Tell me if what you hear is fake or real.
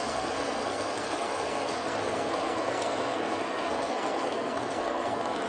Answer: fake